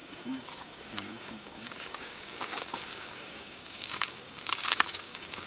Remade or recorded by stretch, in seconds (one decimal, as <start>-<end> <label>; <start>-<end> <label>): 0.0-5.5 remade